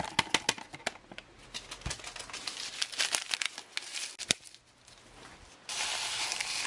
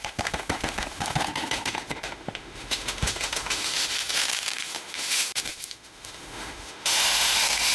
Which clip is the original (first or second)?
first